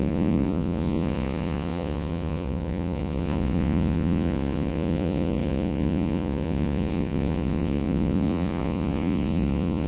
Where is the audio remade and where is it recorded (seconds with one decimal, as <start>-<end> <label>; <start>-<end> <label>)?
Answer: 0.0-9.9 remade